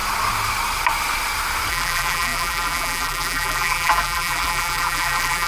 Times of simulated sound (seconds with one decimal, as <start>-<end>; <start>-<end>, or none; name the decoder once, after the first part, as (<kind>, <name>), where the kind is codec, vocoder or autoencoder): 1.7-5.5 (vocoder, BigVGAN v2)